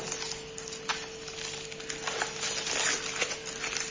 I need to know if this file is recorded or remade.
recorded